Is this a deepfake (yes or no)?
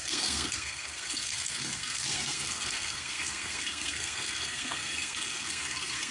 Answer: yes